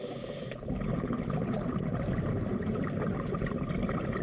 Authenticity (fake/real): real